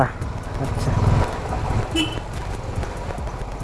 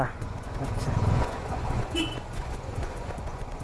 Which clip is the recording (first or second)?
first